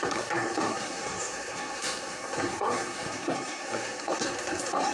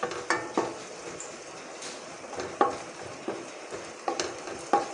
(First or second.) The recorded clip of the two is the second